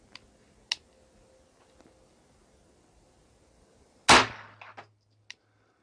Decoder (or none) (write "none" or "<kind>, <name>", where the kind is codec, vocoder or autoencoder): none